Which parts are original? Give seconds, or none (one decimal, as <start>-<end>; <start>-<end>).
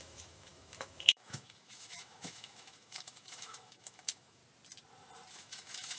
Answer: 4.4-5.3